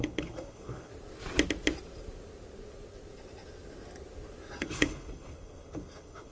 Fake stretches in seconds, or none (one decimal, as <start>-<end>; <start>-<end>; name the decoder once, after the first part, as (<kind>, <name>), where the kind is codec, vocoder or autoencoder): 0.0-0.9 (codec, HILCodec); 4.6-6.3